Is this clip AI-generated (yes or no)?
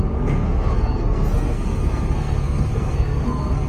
yes